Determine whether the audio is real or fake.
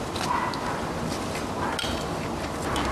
real